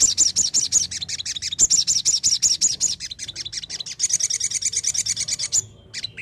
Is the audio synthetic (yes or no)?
no